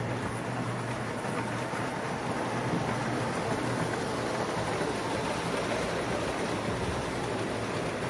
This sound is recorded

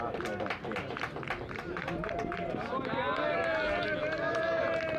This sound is recorded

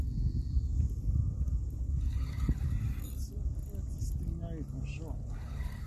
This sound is recorded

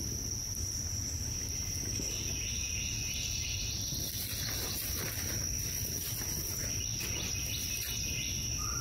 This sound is recorded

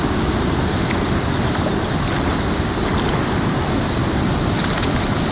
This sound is remade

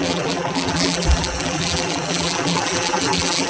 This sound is remade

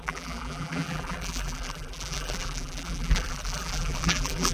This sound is remade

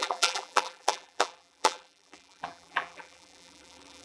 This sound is remade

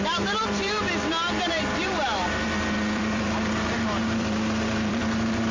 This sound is remade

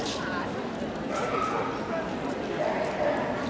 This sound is recorded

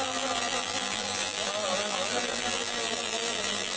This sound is remade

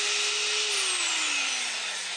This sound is recorded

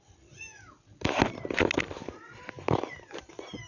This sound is recorded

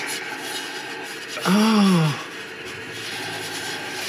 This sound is recorded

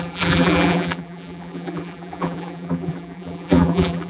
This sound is remade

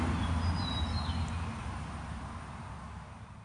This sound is recorded